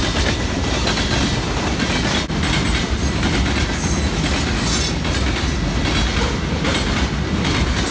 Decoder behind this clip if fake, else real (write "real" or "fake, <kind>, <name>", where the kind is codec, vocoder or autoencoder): real